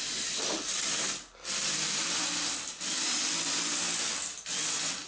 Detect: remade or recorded recorded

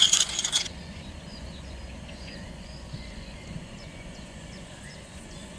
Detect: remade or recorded remade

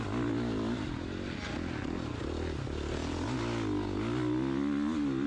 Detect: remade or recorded recorded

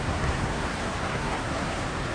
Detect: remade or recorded remade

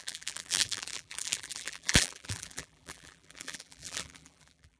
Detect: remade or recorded remade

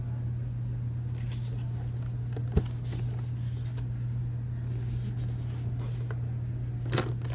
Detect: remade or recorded recorded